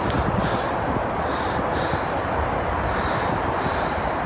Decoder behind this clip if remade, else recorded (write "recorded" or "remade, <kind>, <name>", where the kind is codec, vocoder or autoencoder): recorded